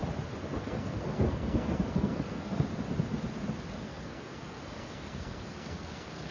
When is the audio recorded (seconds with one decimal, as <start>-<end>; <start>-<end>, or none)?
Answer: 0.0-0.6; 2.7-3.8